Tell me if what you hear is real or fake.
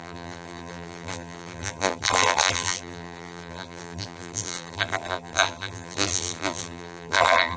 fake